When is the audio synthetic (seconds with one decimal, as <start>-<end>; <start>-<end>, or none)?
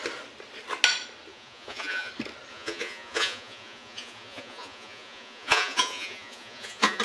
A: 1.3-2.1; 2.5-7.0